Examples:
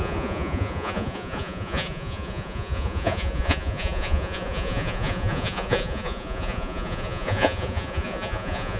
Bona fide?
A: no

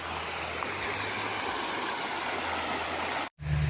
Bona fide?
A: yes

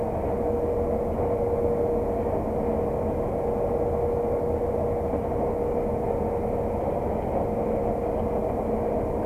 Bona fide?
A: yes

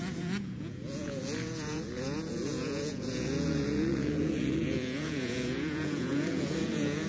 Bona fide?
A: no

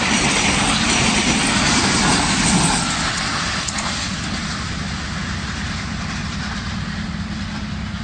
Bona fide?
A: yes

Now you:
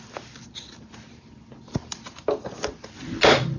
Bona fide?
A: yes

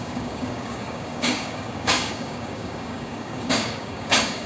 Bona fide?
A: no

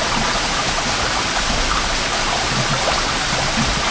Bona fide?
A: yes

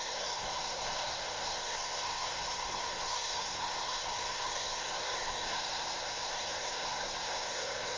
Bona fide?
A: no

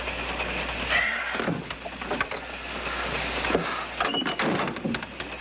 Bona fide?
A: yes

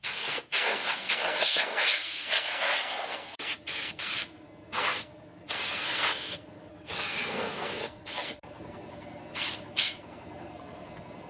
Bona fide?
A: no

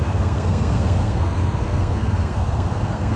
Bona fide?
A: no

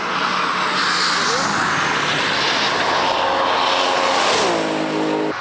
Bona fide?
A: yes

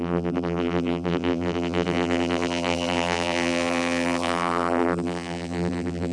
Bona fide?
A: no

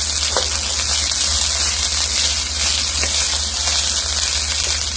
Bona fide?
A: yes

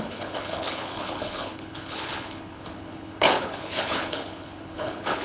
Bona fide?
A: no